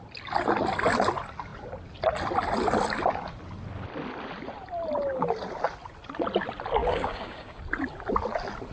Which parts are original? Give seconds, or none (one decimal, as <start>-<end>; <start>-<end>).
0.0-6.8; 7.6-8.7